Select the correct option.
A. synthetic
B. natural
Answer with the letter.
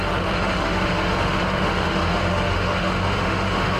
A